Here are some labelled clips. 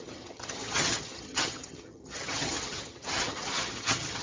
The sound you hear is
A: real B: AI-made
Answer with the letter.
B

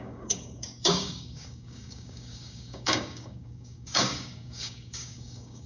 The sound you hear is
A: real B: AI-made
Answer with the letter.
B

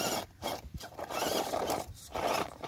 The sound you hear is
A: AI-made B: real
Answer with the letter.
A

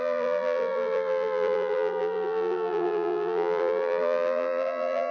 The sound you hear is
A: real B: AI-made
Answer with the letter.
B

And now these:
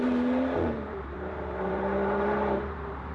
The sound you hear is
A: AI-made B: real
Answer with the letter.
A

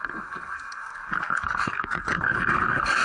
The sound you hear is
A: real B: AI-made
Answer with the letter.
B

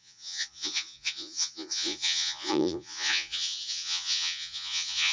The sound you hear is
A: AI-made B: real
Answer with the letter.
A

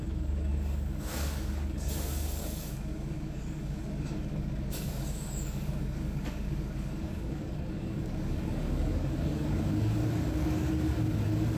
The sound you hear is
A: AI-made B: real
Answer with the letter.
A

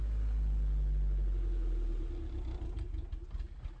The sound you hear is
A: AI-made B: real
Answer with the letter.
B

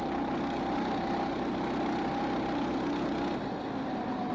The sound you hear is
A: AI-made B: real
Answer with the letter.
B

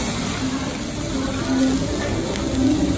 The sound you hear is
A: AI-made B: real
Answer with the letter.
B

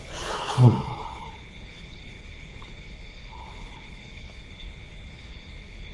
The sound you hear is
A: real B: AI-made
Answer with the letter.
B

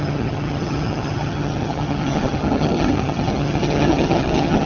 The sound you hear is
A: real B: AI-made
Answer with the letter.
B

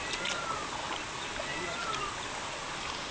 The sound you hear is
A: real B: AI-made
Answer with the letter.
A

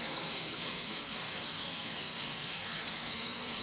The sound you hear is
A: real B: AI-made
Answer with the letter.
B